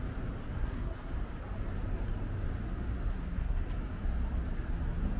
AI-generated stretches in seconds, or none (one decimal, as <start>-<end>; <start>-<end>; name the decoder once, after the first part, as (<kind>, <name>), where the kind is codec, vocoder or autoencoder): 0.4-1.1 (codec, SNAC); 3.1-3.7